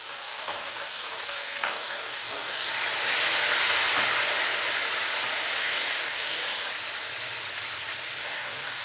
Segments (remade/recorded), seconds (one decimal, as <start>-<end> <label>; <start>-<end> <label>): 0.0-2.7 remade; 2.7-5.6 recorded; 5.6-6.4 remade; 6.4-8.2 recorded; 8.2-8.8 remade